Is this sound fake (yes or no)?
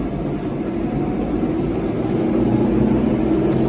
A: no